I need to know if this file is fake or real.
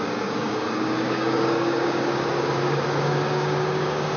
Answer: fake